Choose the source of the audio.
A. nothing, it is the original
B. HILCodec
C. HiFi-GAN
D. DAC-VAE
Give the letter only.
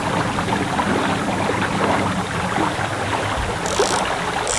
A